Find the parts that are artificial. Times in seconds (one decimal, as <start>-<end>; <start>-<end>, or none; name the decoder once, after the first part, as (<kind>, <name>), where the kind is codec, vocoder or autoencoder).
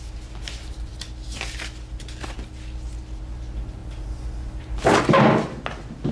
none